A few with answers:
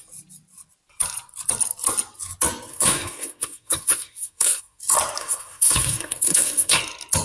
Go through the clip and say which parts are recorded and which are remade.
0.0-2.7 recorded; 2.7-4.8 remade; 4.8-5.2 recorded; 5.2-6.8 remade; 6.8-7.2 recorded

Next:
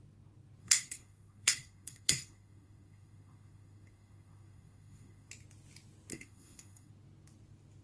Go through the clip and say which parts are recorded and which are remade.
0.0-0.6 recorded; 0.6-5.3 remade; 5.3-6.1 recorded; 6.1-6.9 remade; 6.9-7.8 recorded

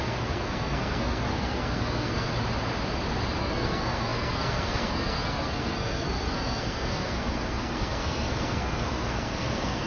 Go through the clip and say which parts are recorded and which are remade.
0.0-2.3 remade; 2.3-3.4 recorded; 3.4-9.9 remade

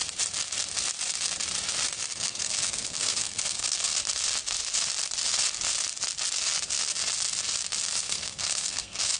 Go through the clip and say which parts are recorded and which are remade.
0.0-2.2 recorded; 2.2-4.0 remade; 4.0-8.0 recorded; 8.0-9.2 remade

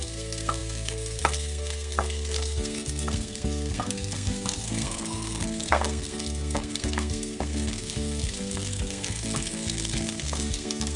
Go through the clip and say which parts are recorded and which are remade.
0.0-11.0 remade

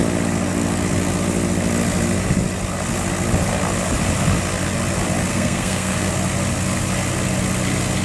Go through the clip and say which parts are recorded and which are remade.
0.0-5.3 recorded; 5.3-6.1 remade; 6.1-8.0 recorded

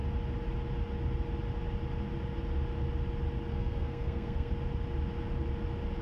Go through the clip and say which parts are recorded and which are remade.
0.0-3.5 recorded; 3.5-4.5 remade; 4.5-6.0 recorded